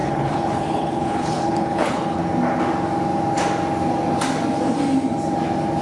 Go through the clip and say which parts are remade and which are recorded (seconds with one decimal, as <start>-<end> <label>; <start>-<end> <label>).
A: 0.0-2.2 remade; 2.2-5.8 recorded